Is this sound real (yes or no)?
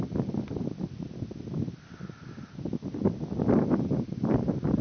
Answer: yes